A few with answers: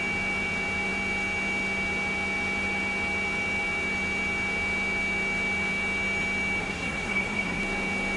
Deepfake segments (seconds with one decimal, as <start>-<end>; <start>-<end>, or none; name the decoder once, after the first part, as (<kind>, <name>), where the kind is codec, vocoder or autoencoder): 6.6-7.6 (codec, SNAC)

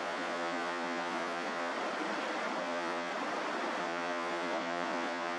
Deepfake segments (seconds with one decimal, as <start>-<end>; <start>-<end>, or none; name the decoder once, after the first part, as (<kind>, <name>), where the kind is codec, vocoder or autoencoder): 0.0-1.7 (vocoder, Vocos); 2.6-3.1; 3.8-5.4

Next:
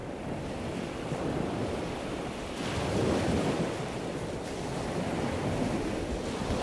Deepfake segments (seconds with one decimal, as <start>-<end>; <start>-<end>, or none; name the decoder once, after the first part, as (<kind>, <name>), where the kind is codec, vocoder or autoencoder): none